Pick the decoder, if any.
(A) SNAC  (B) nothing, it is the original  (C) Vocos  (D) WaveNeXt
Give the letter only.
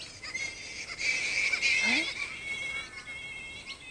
B